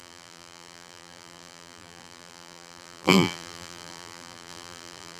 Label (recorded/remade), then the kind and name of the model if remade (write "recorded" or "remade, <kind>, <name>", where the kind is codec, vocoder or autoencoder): remade, vocoder, BigVGAN v2